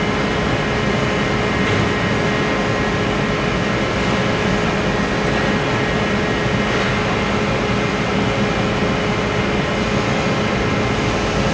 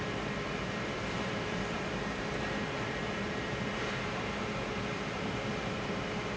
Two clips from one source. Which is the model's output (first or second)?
second